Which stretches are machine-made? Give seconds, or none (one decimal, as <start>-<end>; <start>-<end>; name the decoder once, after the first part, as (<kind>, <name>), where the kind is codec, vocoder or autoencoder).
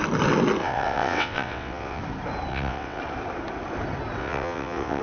0.6-2.0 (vocoder, WaveNeXt); 2.5-3.0; 4.2-5.0